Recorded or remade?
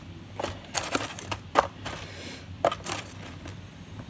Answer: recorded